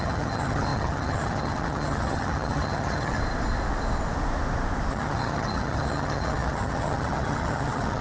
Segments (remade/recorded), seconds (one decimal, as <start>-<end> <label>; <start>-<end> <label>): 0.0-3.2 remade; 3.2-4.9 recorded; 4.9-8.0 remade